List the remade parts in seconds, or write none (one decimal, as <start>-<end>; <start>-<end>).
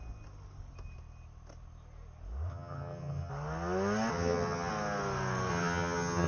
2.5-3.3; 4.1-4.7; 5.5-6.3